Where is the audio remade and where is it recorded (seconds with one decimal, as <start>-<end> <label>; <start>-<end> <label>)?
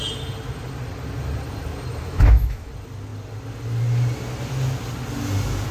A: 0.0-2.0 recorded; 2.0-2.7 remade; 2.7-5.7 recorded